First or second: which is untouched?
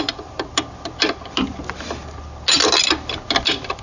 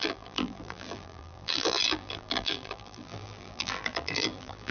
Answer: first